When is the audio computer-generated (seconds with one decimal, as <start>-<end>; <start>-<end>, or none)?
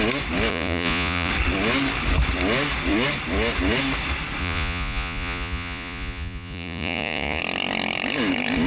0.5-1.3; 4.4-7.4